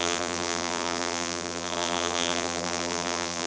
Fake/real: fake